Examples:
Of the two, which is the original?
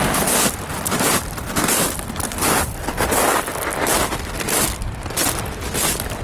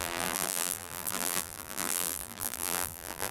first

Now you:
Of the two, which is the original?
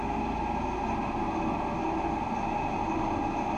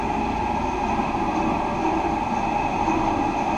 first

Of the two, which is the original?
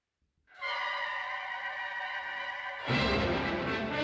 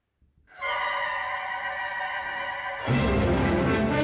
second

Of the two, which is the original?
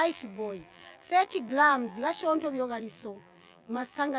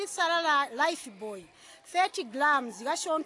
second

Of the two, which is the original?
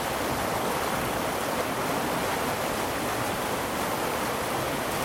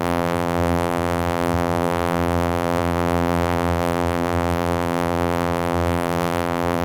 first